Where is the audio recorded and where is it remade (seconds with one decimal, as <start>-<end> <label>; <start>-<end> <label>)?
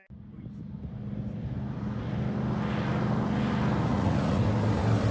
0.0-3.9 recorded; 3.9-4.4 remade; 4.4-5.1 recorded